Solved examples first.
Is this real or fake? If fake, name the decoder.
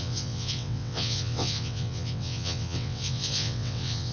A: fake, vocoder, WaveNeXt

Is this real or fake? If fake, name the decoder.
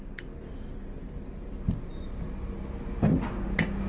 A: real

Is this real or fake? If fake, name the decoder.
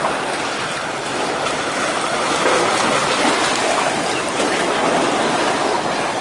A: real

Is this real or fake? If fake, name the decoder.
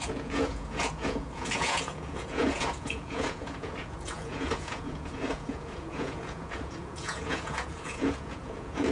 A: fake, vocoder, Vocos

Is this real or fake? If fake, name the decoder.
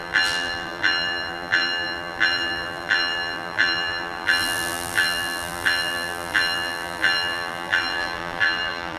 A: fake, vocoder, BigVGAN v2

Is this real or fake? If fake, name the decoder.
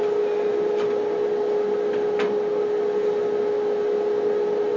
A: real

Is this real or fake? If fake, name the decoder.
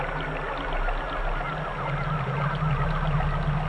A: real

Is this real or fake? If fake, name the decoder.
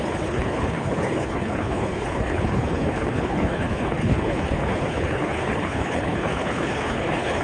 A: fake, codec, HILCodec